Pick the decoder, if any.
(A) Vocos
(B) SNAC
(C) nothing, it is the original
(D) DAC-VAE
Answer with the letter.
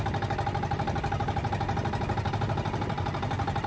C